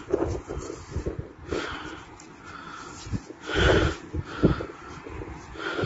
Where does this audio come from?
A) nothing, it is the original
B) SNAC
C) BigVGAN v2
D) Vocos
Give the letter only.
A